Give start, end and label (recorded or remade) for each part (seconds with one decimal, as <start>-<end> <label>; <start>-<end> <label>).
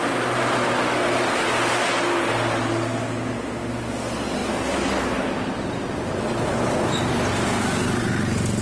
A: 0.0-8.6 recorded